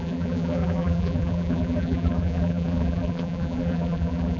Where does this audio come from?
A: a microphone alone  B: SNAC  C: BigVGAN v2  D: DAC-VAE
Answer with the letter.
C